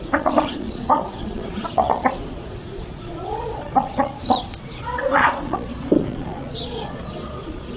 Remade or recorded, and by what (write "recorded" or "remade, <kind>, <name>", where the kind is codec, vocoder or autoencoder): remade, vocoder, Vocos